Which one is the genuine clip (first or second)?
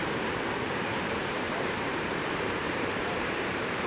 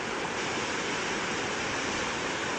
second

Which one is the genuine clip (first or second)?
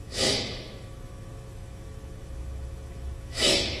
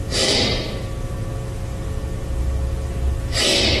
second